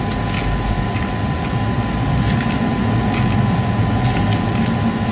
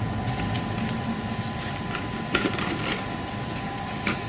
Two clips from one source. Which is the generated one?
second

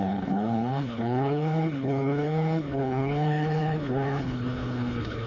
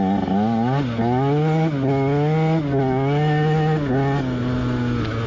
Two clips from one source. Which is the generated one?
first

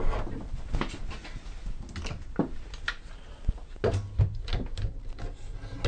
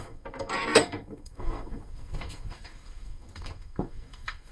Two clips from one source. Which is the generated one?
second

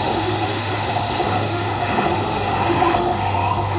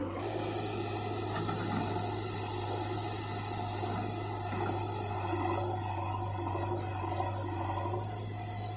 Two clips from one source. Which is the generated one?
first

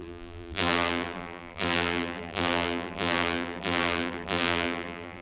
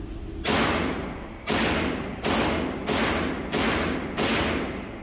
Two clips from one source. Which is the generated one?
first